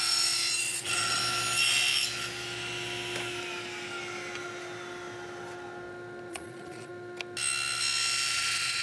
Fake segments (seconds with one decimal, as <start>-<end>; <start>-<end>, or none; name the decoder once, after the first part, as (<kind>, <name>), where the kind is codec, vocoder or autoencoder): 0.0-1.2 (vocoder, Vocos); 6.3-6.9; 8.3-8.8